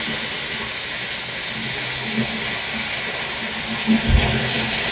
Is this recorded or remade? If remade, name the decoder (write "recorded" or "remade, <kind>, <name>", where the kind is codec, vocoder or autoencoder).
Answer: recorded